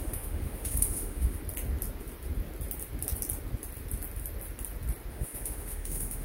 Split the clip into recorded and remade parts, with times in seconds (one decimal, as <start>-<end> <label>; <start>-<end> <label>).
0.0-1.4 remade; 1.4-5.1 recorded; 5.1-6.2 remade